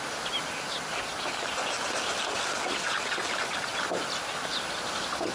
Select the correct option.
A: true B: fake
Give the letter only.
A